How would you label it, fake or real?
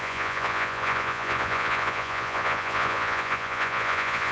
fake